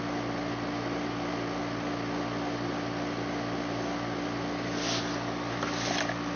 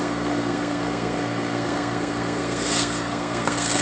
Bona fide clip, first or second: first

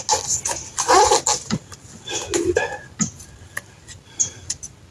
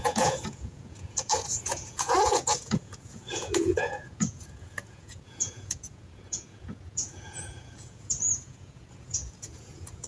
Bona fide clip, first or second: first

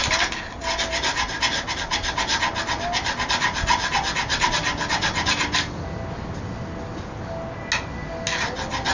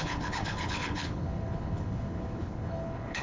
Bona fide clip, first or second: first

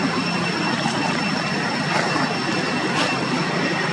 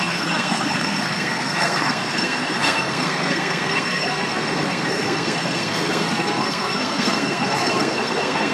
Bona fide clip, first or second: first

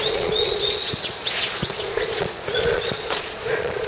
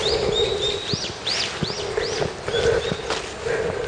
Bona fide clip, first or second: second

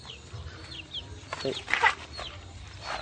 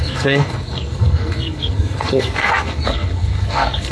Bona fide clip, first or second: first